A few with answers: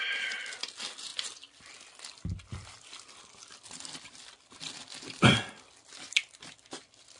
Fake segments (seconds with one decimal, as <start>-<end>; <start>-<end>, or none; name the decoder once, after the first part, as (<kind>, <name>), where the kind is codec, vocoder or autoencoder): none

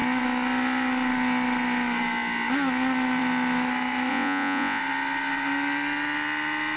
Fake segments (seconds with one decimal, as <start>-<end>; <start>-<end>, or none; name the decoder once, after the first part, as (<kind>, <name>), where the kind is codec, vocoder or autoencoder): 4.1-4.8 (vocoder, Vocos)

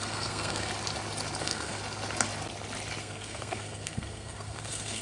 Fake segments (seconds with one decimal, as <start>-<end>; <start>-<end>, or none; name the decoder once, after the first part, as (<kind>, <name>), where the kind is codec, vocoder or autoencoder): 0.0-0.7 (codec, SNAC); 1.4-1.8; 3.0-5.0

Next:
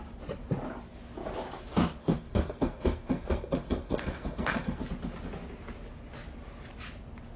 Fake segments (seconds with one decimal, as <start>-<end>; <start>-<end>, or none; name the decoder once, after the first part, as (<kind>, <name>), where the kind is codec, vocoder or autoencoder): 2.0-4.8 (codec, SNAC)